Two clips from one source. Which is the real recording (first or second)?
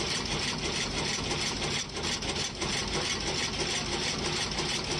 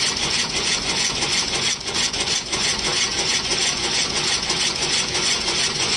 first